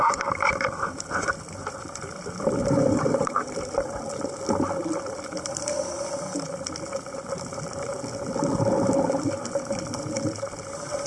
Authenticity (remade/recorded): remade